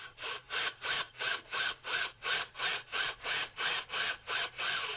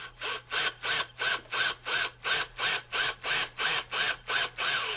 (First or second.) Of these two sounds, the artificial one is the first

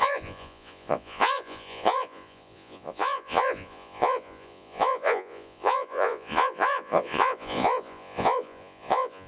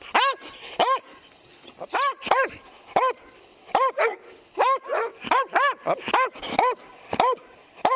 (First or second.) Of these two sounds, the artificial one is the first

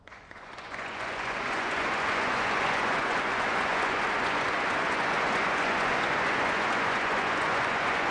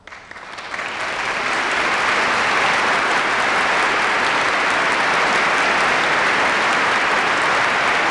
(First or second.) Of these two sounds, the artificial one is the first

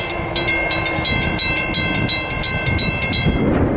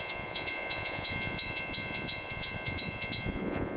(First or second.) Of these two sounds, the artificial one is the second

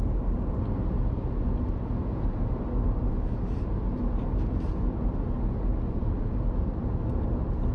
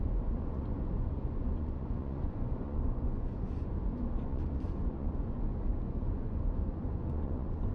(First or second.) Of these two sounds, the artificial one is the second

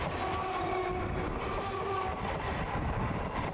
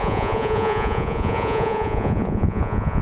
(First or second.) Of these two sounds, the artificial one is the second